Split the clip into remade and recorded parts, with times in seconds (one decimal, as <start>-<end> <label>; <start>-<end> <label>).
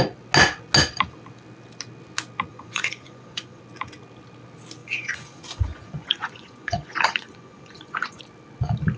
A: 0.0-2.5 recorded; 2.5-3.6 remade; 3.6-4.8 recorded; 4.8-8.2 remade; 8.2-9.0 recorded